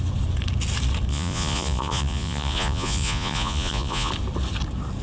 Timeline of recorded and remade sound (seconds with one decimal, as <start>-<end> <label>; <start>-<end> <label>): 0.0-1.1 recorded; 1.1-4.1 remade; 4.1-5.0 recorded